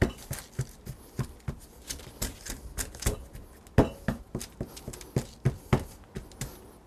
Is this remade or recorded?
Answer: recorded